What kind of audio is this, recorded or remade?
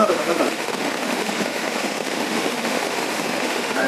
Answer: remade